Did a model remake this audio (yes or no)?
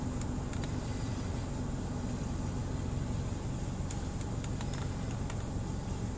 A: no